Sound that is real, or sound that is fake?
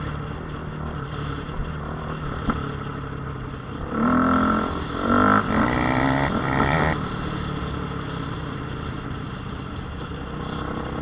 real